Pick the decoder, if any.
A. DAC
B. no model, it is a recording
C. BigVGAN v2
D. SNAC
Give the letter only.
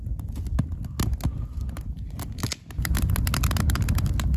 B